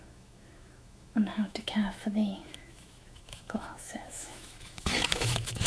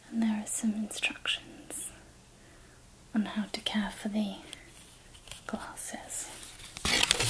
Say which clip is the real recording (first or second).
second